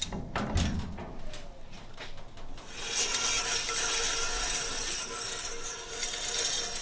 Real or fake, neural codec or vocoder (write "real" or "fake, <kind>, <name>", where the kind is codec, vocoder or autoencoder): real